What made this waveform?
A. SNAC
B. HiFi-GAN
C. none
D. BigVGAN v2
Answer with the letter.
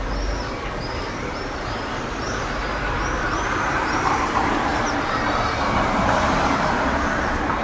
D